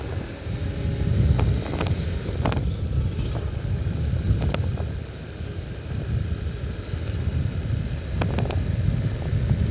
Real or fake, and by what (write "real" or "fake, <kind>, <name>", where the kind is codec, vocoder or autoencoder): real